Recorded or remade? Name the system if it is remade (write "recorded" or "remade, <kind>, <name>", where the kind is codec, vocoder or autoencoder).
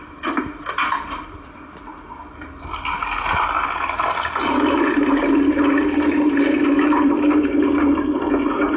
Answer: recorded